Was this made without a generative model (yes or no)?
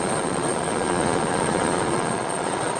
no